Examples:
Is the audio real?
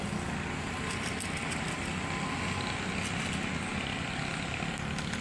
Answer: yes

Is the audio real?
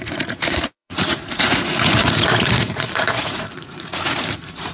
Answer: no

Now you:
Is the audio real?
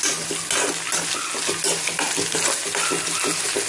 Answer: yes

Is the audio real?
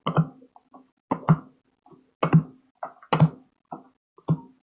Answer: yes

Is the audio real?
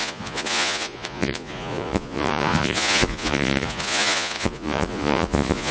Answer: no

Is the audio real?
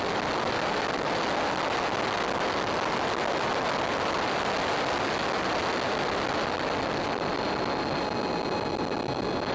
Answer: yes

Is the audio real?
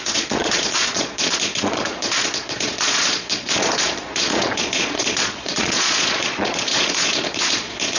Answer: no